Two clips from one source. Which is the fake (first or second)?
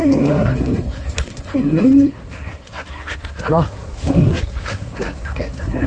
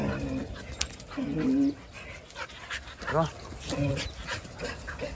first